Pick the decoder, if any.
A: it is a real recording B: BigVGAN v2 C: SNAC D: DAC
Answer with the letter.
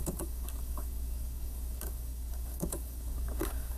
D